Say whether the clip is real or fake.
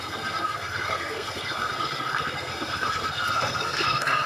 fake